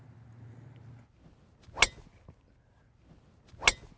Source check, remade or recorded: recorded